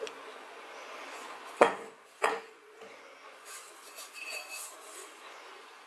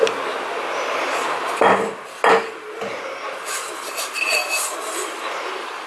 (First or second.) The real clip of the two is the second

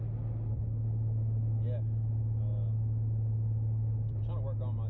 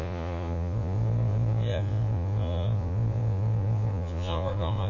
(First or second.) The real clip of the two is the first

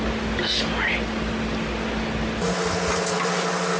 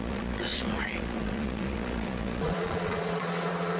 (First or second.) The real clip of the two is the first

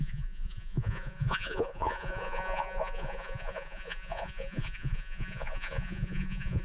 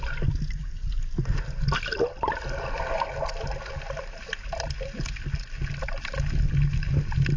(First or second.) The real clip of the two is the second